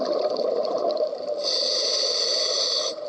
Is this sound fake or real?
fake